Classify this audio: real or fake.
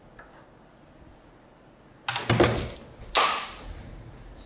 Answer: real